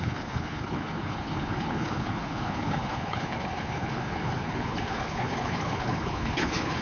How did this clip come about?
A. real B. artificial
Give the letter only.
B